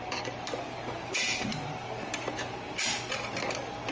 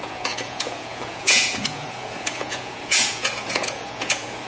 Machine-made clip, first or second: second